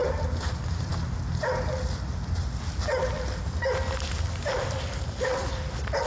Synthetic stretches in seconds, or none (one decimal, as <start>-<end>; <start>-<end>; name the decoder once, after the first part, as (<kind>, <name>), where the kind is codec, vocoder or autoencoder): none